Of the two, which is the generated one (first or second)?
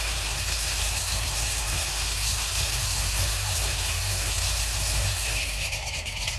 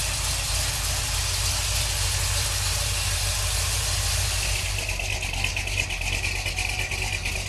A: first